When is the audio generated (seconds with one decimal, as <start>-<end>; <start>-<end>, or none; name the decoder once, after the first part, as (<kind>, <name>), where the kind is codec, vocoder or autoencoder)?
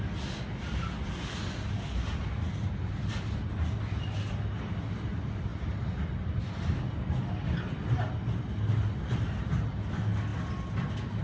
none